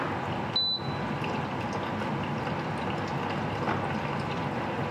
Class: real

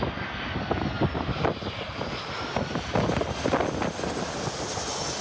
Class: real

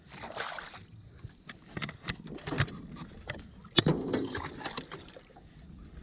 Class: real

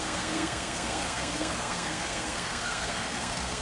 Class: fake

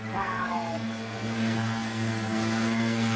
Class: fake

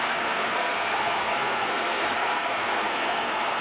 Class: fake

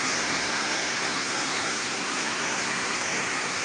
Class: fake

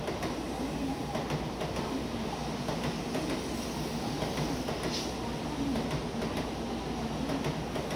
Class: real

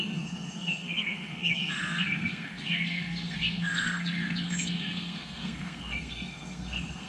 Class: fake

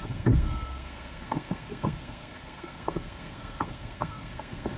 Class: fake